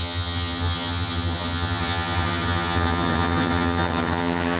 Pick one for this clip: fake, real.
fake